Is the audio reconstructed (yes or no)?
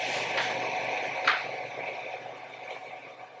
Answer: no